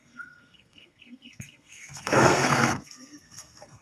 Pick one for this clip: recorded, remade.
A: remade